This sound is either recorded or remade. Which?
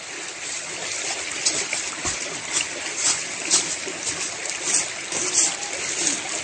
recorded